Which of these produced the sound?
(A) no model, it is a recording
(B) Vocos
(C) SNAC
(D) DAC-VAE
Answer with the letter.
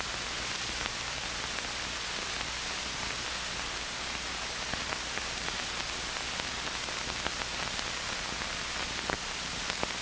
A